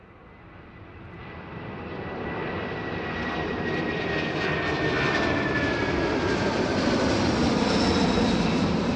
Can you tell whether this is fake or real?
fake